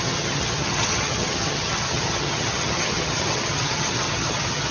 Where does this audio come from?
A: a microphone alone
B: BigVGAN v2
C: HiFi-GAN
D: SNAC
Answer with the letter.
C